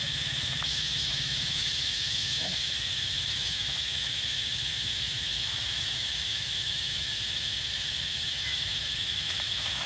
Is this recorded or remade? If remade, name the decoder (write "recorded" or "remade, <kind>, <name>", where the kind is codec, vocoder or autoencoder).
remade, autoencoder, DAC-VAE